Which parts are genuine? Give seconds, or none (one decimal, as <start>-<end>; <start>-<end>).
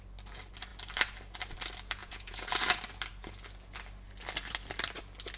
0.0-2.0; 2.5-5.4